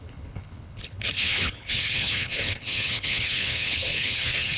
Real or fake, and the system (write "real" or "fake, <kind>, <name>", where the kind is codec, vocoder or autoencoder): fake, codec, HILCodec